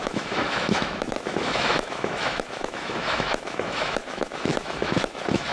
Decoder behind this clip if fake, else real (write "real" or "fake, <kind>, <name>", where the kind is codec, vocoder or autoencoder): fake, autoencoder, DAC-VAE